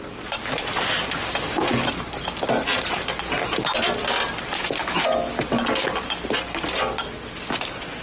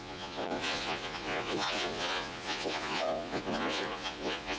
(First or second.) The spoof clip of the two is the second